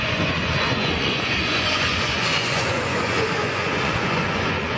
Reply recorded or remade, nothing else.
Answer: remade